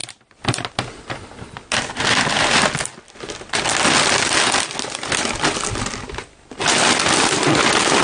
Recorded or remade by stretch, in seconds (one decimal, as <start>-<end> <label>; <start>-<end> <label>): 0.0-8.0 recorded